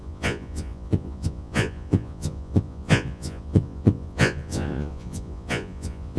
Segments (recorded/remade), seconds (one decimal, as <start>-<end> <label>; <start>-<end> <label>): 0.0-6.2 remade